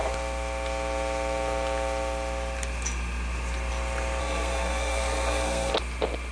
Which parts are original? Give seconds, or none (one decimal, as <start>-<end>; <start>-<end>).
0.0-4.2; 5.7-6.3